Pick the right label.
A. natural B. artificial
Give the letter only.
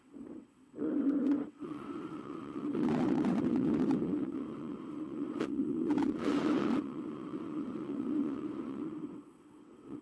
B